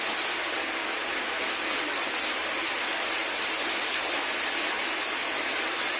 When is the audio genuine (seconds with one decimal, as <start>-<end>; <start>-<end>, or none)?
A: 0.0-6.0